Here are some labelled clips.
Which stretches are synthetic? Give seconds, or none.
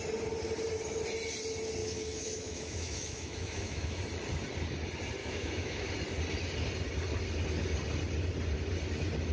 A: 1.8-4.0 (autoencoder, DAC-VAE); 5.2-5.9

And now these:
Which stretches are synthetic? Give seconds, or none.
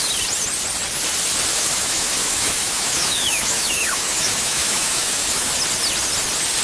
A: 1.5-5.5 (autoencoder, DAC-VAE)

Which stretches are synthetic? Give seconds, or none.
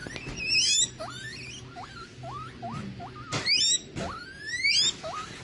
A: none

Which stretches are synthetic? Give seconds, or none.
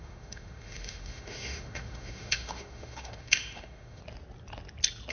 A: 0.0-4.0 (autoencoder, DAC-VAE)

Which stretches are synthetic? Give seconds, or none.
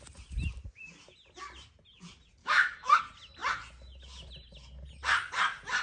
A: 2.4-3.0 (autoencoder, DAC-VAE)